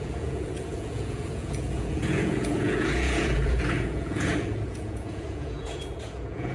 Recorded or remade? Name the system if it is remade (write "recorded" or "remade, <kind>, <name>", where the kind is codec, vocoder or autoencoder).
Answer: remade, vocoder, Vocos